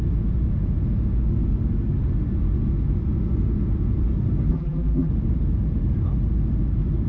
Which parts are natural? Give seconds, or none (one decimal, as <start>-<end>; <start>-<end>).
0.0-4.5; 5.1-7.1